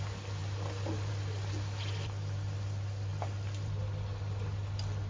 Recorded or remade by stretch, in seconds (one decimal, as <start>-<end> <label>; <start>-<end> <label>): 0.0-5.1 recorded